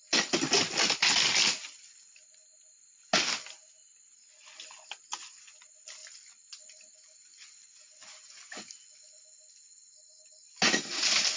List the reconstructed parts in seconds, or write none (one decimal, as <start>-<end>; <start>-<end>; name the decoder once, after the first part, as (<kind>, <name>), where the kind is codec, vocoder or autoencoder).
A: none